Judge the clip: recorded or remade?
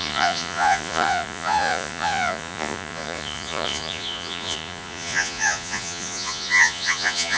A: remade